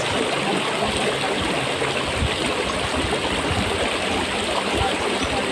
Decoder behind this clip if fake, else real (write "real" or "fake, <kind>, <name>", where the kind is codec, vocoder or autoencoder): real